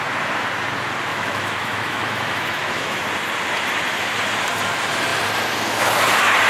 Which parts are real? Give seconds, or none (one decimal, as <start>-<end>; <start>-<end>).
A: 0.0-1.1; 3.0-6.5